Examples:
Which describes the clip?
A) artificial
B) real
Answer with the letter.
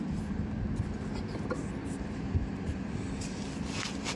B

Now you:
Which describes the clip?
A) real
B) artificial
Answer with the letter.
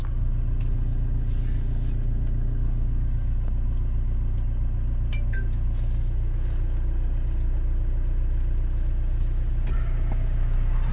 A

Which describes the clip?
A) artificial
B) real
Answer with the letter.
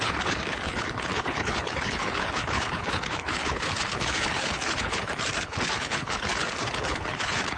A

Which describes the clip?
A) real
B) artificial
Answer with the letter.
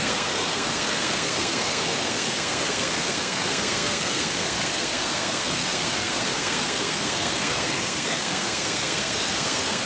B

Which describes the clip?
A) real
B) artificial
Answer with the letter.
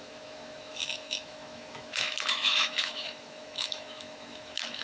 B